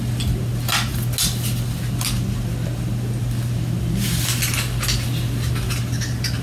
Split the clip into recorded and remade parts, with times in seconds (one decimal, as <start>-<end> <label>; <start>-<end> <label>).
0.0-6.4 recorded